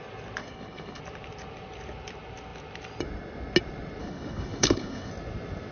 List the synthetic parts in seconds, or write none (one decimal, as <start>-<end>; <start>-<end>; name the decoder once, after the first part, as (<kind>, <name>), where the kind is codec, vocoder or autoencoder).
0.4-1.0 (codec, HILCodec); 4.0-5.1